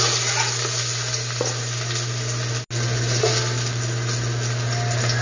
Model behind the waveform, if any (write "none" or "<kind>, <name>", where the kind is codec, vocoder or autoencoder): none